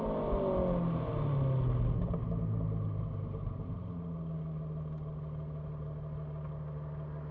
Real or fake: real